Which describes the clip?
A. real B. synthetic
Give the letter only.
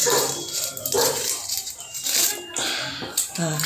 B